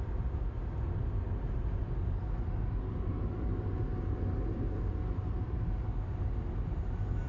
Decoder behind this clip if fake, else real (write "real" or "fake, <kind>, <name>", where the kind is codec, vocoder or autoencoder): real